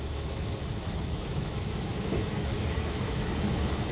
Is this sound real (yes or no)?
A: no